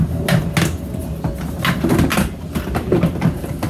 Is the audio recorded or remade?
recorded